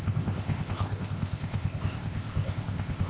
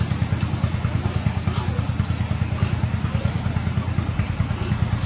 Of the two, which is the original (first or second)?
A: second